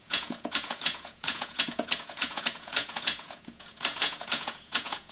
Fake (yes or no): yes